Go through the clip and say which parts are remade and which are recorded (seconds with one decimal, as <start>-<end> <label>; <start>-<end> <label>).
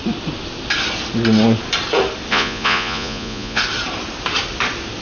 0.0-2.3 recorded; 2.3-3.6 remade; 3.6-5.0 recorded